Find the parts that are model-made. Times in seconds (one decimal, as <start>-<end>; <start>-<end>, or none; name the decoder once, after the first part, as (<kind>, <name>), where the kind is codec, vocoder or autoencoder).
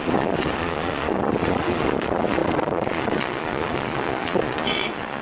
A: 0.0-5.2 (vocoder, Vocos)